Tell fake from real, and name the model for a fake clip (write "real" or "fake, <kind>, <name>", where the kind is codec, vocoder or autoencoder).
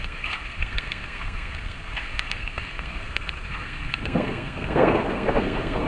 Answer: fake, codec, SNAC